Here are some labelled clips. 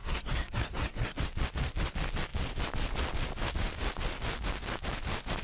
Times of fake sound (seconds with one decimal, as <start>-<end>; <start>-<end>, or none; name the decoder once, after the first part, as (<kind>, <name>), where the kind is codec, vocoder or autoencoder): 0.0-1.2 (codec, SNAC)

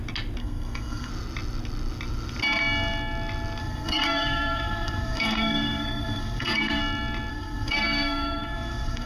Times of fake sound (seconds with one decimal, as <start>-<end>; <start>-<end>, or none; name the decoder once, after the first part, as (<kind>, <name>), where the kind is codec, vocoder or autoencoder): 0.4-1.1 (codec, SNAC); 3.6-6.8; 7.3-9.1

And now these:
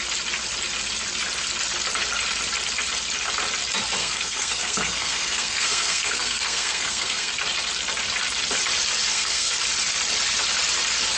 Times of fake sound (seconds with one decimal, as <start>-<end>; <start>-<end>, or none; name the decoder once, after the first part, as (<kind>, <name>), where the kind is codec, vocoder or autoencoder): 4.0-7.3 (codec, SNAC); 9.1-9.6

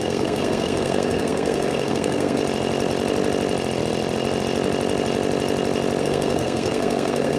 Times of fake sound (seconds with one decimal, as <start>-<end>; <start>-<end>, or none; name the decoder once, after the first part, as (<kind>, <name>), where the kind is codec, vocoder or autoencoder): 0.0-2.4 (codec, SNAC); 6.0-7.4